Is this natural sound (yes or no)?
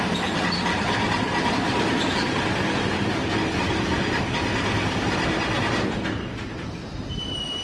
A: yes